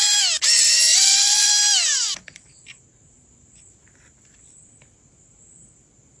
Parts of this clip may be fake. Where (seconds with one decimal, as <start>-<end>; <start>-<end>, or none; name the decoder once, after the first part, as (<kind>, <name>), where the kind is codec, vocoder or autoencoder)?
0.9-1.5 (vocoder, Vocos)